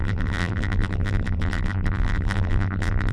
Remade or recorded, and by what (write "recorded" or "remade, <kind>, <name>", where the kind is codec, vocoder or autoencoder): remade, vocoder, BigVGAN v2